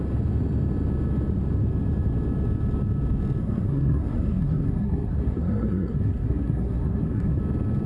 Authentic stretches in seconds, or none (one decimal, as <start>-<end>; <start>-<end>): 0.0-3.4; 7.4-7.9